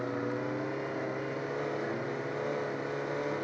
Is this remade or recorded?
recorded